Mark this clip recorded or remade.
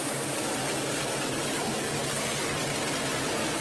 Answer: recorded